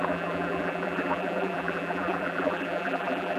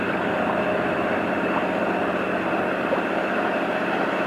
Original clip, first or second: second